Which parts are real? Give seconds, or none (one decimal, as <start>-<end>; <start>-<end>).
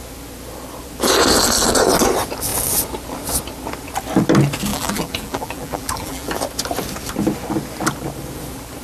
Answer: 0.0-4.7; 6.4-8.8